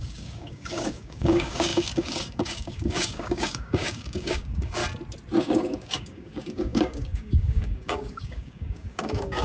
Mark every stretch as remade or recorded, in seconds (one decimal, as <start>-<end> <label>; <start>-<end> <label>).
0.0-4.8 remade; 4.8-5.4 recorded; 5.4-9.4 remade